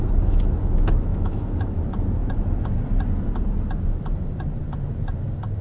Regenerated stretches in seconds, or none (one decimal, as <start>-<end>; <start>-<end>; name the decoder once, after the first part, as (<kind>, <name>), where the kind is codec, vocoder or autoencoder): 1.1-1.8 (autoencoder, DAC-VAE)